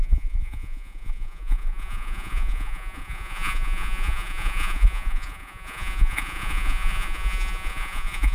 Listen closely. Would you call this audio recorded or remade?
remade